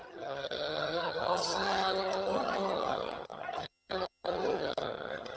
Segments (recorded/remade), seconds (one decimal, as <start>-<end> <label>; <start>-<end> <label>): 0.0-5.4 remade